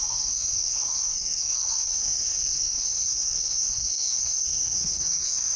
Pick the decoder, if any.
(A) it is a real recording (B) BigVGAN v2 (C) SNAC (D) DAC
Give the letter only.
C